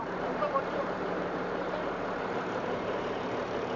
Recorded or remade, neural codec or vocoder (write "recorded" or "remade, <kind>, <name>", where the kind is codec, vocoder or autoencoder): remade, vocoder, BigVGAN v2